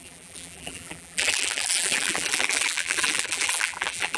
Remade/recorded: remade